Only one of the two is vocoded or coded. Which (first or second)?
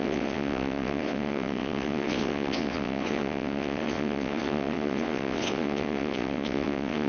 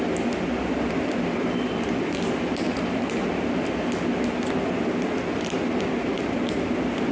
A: first